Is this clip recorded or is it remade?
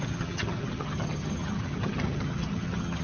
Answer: remade